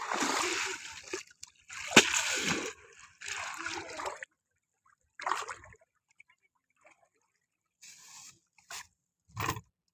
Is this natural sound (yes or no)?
yes